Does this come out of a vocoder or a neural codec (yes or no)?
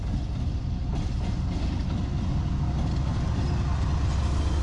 no